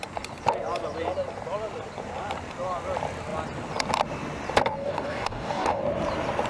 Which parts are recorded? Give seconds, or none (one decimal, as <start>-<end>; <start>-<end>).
0.0-4.8; 5.8-6.5